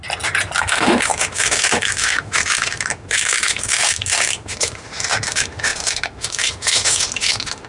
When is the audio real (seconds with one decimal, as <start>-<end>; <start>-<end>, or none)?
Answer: 0.0-0.6